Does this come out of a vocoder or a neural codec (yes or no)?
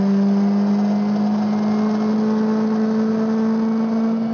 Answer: no